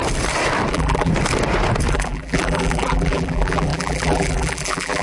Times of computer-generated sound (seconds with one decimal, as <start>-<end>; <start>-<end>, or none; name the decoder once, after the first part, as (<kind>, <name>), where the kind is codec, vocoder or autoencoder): 0.7-1.1 (vocoder, BigVGAN v2); 1.9-5.0